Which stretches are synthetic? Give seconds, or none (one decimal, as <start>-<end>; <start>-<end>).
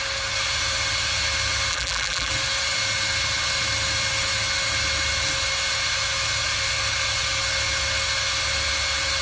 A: 1.7-2.3